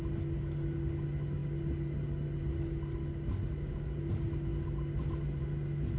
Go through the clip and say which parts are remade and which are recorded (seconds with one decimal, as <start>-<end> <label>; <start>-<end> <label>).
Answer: 0.0-6.0 recorded